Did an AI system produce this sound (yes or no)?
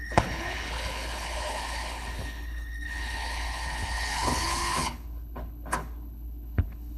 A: yes